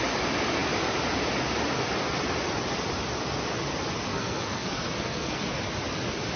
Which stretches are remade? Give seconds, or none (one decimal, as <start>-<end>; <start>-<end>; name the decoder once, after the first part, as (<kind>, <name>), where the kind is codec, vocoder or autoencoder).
4.1-5.6 (codec, SNAC)